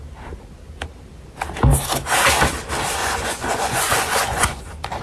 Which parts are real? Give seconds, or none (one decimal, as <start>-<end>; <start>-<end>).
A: 0.0-3.0; 4.6-5.0